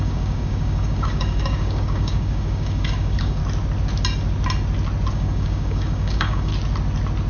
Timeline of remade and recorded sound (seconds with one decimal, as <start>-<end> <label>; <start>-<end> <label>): 0.0-3.4 remade; 3.4-5.1 recorded; 5.1-6.5 remade; 6.5-7.3 recorded

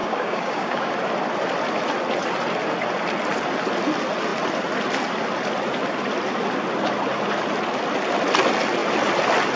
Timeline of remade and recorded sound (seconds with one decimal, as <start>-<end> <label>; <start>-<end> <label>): 0.0-0.9 remade; 0.9-9.6 recorded

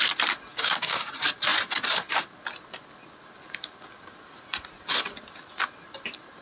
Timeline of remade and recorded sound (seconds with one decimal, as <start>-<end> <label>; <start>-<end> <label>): 0.0-0.5 recorded; 0.5-1.1 remade; 1.1-6.4 recorded

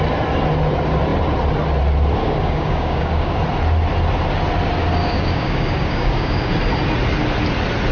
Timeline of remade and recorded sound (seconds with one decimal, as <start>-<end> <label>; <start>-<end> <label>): 0.0-2.2 recorded; 2.2-3.4 remade; 3.4-5.0 recorded; 5.0-6.5 remade; 6.5-7.9 recorded